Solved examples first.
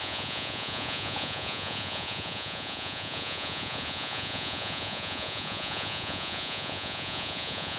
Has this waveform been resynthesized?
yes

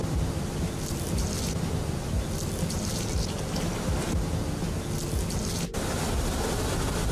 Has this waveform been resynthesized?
no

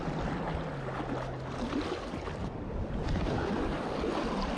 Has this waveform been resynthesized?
no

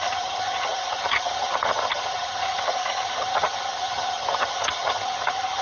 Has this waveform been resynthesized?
yes